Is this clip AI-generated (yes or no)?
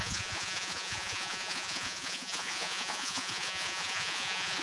yes